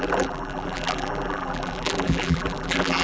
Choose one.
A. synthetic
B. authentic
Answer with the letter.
A